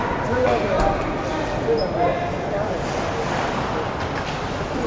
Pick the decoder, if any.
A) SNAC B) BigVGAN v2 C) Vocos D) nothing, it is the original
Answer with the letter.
D